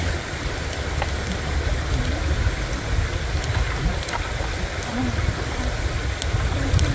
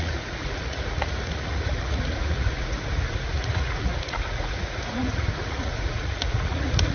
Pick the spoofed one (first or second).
second